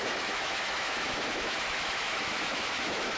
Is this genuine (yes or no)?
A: no